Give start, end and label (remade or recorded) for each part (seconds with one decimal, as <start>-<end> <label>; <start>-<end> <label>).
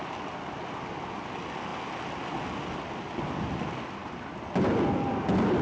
0.0-5.6 recorded